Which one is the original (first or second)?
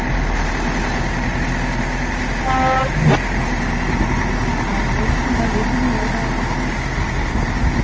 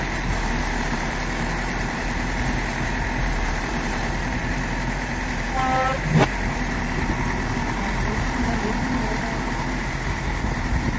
first